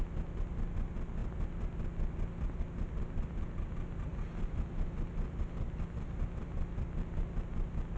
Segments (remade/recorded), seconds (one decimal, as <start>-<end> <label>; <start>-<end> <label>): 0.0-8.0 recorded